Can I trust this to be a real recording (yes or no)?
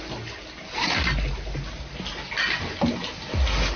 yes